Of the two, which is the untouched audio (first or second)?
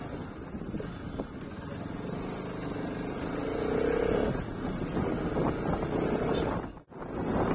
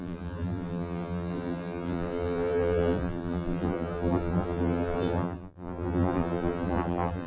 first